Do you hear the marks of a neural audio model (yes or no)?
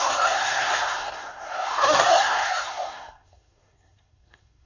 yes